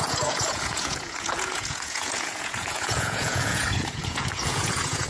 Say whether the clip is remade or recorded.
remade